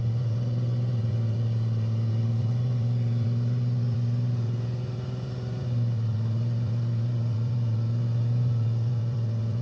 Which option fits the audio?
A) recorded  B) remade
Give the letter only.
B